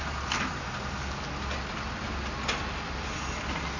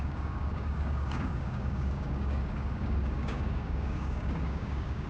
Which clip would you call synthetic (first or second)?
second